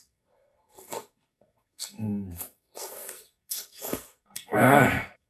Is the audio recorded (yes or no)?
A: no